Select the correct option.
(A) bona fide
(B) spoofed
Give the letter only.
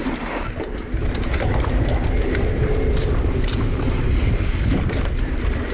B